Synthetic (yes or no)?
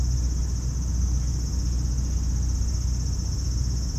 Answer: no